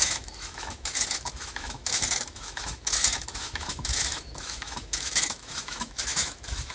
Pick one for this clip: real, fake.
fake